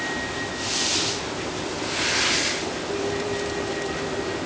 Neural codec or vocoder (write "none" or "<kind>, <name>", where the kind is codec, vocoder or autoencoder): none